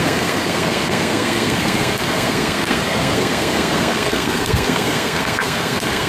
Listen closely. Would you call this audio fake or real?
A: fake